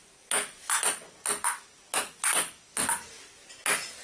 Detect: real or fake real